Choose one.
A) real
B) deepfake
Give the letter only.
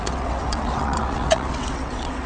B